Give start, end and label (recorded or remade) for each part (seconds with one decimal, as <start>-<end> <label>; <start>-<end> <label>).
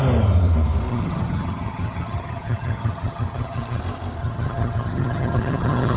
0.0-0.9 recorded; 0.9-3.8 remade; 3.8-4.2 recorded; 4.2-6.0 remade